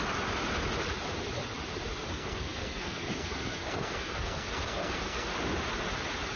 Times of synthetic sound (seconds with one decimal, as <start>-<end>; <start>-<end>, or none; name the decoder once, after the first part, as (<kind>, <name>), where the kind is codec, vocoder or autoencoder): 2.1-5.3 (codec, SNAC)